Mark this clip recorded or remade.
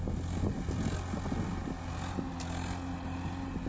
recorded